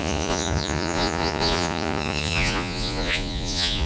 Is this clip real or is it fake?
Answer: fake